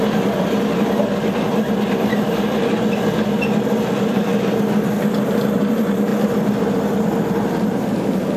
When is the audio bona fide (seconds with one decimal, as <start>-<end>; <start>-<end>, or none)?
4.3-5.1; 6.1-7.2